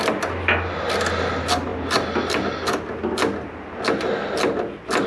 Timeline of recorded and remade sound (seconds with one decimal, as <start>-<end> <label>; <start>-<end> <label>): 0.0-5.1 recorded